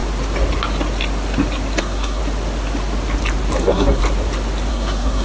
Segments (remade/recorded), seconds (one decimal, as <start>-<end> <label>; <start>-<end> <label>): 0.0-1.8 recorded; 1.8-2.2 remade; 2.2-3.6 recorded; 3.6-4.0 remade; 4.0-4.7 recorded; 4.7-5.2 remade